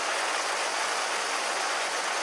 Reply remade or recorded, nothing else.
remade